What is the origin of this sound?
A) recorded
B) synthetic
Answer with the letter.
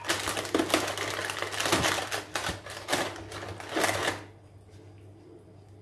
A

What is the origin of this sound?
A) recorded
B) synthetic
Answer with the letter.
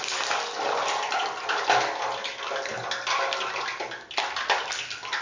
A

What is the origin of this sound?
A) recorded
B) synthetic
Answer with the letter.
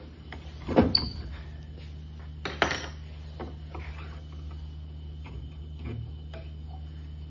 A